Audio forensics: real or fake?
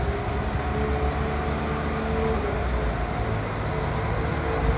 real